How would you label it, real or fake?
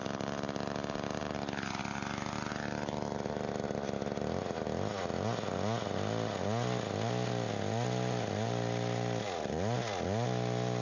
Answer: real